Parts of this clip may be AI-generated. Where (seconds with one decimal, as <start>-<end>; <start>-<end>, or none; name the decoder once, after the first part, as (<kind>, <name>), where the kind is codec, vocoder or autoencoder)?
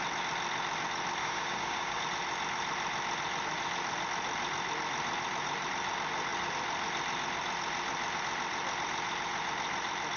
1.2-2.0 (codec, DAC)